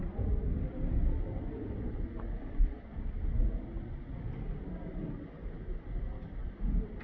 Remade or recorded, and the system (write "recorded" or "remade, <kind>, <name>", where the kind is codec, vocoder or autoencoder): recorded